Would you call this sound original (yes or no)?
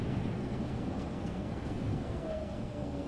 no